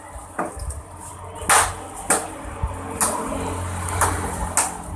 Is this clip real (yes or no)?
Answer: yes